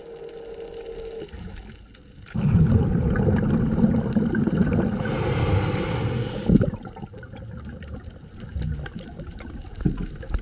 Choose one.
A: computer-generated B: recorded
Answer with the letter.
B